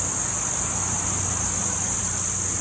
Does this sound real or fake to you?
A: real